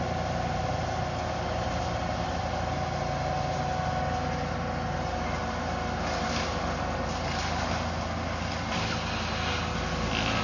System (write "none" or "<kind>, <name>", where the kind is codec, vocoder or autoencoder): none